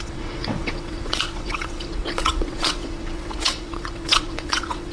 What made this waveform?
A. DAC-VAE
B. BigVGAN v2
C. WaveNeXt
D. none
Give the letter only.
C